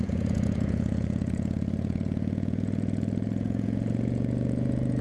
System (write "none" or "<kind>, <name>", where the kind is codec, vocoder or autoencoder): vocoder, Vocos